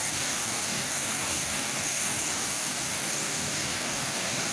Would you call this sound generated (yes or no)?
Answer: yes